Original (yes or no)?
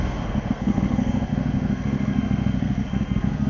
no